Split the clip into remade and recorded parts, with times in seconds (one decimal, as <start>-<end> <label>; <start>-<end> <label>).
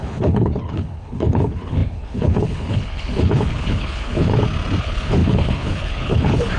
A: 0.0-4.3 remade; 4.3-4.8 recorded; 4.8-6.6 remade